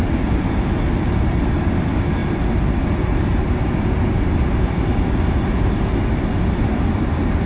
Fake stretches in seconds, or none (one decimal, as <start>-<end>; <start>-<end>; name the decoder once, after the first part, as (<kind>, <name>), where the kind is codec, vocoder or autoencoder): none